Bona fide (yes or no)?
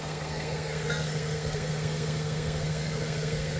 no